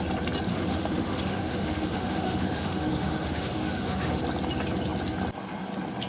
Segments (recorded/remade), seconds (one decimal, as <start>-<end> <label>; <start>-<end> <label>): 0.0-0.5 recorded; 0.5-4.2 remade; 4.2-6.1 recorded